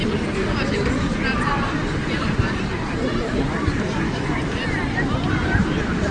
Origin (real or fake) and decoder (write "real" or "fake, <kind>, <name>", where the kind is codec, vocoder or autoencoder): fake, vocoder, BigVGAN v2